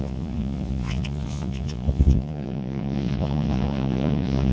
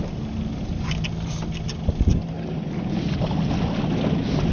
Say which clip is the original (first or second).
second